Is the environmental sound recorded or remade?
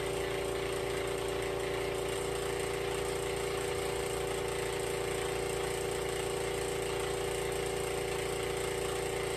recorded